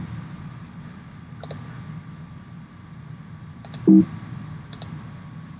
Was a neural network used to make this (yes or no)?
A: no